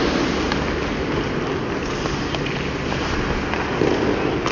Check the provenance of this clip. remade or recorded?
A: recorded